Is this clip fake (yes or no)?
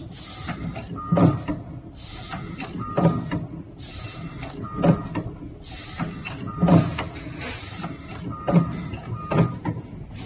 no